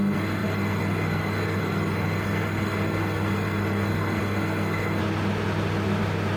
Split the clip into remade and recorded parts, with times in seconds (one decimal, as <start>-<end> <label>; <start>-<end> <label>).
0.0-5.0 remade; 5.0-6.4 recorded